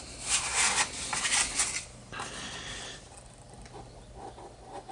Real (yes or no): yes